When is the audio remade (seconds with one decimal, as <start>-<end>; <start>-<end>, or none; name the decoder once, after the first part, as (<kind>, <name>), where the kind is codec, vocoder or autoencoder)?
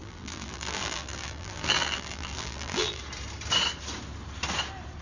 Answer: 0.0-3.0 (vocoder, BigVGAN v2)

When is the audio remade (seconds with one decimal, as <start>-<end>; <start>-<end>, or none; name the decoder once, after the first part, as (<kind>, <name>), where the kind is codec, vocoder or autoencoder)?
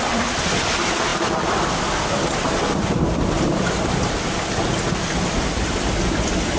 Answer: 0.0-6.6 (vocoder, BigVGAN v2)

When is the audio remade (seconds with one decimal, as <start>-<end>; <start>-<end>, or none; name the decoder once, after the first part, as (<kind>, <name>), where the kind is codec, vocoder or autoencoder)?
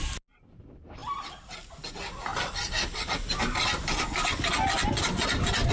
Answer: none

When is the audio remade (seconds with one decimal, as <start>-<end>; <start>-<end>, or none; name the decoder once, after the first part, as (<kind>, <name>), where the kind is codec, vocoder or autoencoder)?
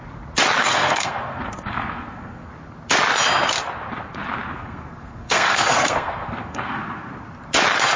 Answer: 0.6-2.5 (codec, SNAC); 4.6-7.1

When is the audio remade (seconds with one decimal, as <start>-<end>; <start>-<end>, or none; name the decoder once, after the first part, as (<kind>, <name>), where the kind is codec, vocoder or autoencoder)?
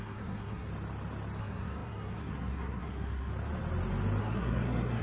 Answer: 0.0-0.7 (codec, SNAC); 1.4-3.3; 4.2-5.0